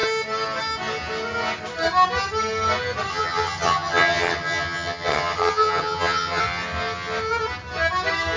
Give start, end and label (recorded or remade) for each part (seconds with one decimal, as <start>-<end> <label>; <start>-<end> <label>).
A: 0.0-3.1 recorded; 3.1-6.4 remade; 6.4-8.4 recorded